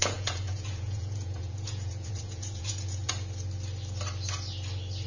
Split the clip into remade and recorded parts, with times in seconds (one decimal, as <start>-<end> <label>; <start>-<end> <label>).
0.0-3.1 remade; 3.1-5.1 recorded